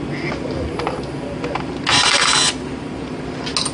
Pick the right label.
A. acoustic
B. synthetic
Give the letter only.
A